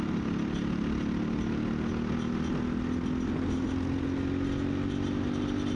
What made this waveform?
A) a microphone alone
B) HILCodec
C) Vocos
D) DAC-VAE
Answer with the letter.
A